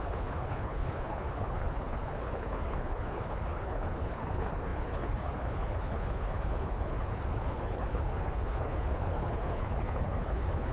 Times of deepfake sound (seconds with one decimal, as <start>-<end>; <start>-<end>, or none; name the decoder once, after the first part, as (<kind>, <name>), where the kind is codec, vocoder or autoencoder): 0.0-10.7 (codec, HILCodec)